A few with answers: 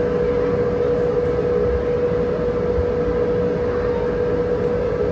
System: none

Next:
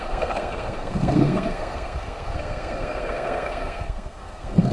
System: codec, SNAC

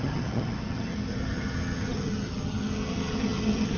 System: vocoder, HiFi-GAN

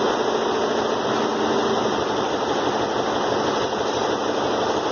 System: none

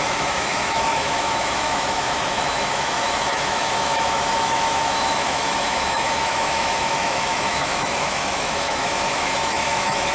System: autoencoder, DAC-VAE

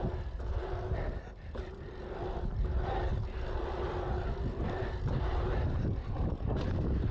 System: none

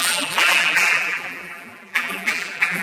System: vocoder, BigVGAN v2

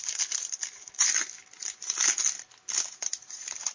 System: none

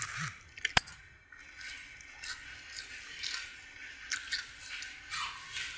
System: none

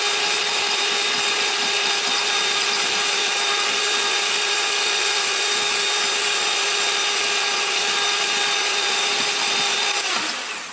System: none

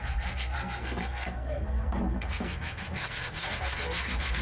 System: codec, SNAC